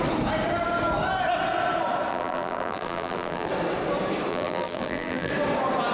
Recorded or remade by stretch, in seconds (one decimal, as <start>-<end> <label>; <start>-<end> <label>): 0.0-2.1 recorded; 2.1-3.5 remade; 3.5-4.3 recorded; 4.3-5.3 remade; 5.3-5.9 recorded